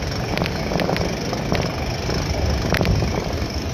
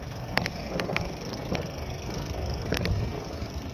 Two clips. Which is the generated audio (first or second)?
second